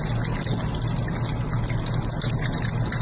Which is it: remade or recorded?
recorded